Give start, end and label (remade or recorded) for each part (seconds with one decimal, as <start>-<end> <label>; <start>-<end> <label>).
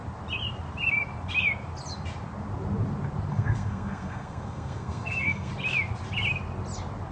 0.0-3.3 recorded; 3.3-5.5 remade; 5.5-7.1 recorded